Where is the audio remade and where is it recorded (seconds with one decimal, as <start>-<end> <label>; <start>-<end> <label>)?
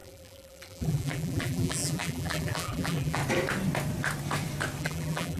0.0-3.2 remade; 3.2-4.8 recorded; 4.8-5.4 remade